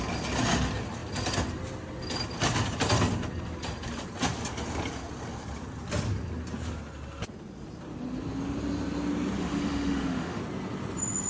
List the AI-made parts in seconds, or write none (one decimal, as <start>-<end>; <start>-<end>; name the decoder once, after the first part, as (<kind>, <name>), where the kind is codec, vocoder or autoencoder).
9.4-10.4 (autoencoder, DAC-VAE)